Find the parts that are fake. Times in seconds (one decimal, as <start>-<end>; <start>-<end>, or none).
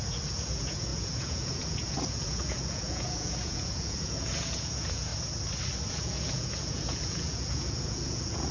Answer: 0.0-5.1; 5.9-8.5